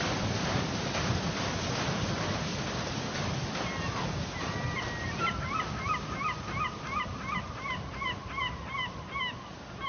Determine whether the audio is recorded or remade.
recorded